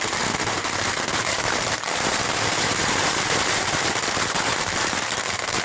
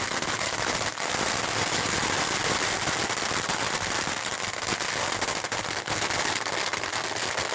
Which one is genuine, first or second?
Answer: second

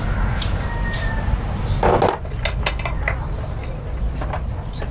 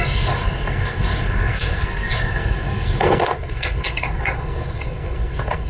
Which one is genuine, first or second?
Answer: first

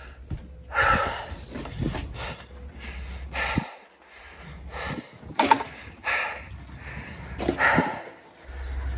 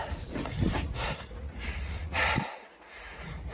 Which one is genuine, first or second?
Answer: first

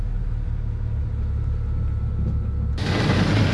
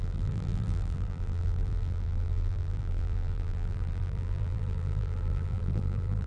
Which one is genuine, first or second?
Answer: first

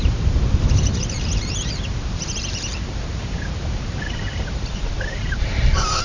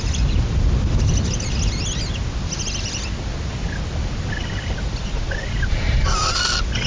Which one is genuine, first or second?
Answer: second